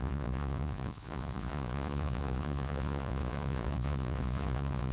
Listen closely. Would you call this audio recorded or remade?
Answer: remade